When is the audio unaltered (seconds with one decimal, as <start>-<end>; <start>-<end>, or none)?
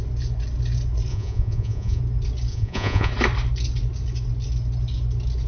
0.0-1.1; 2.0-2.5; 3.1-5.5